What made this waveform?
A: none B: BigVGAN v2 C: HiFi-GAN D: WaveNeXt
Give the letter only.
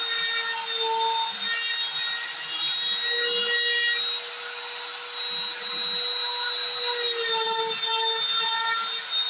A